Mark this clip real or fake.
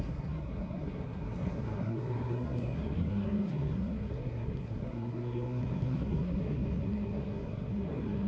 fake